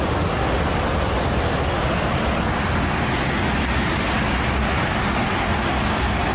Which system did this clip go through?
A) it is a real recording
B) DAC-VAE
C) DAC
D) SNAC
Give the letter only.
A